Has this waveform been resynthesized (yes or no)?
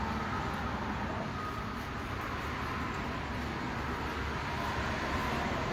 no